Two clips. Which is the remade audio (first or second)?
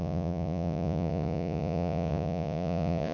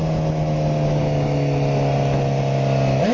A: first